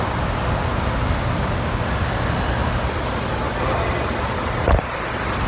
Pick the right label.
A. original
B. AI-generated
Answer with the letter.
A